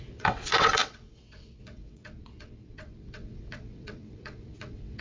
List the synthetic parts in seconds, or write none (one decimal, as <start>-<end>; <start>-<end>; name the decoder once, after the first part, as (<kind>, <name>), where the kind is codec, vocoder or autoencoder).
0.0-5.0 (vocoder, WaveNeXt)